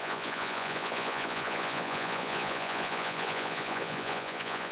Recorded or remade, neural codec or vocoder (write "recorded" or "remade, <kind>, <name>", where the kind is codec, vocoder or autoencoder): remade, vocoder, Vocos